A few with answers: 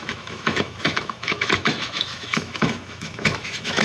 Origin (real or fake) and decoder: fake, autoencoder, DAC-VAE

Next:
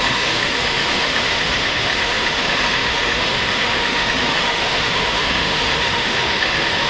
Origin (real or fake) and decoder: fake, autoencoder, DAC-VAE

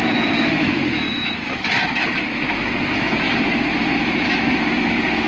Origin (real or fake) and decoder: fake, autoencoder, DAC-VAE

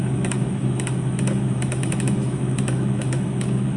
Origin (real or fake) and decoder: fake, autoencoder, DAC-VAE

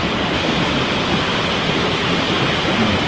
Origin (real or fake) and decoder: real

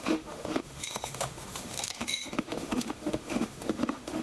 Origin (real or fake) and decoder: fake, autoencoder, DAC-VAE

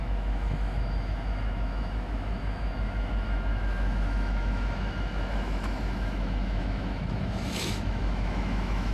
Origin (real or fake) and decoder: fake, autoencoder, DAC-VAE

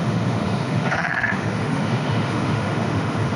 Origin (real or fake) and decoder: fake, autoencoder, DAC-VAE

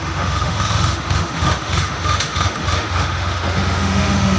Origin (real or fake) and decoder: fake, autoencoder, DAC-VAE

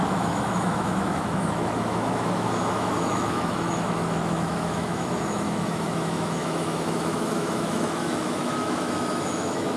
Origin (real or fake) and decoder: fake, autoencoder, DAC-VAE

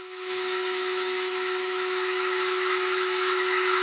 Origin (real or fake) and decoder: fake, autoencoder, DAC-VAE